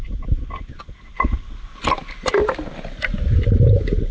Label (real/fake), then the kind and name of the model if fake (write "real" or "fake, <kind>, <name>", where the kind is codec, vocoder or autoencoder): real